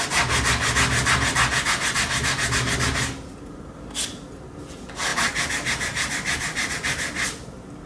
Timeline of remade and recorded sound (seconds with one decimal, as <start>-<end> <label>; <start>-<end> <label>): 0.0-7.9 recorded